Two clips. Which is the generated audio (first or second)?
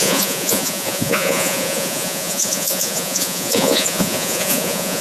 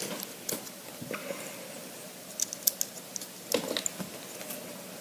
first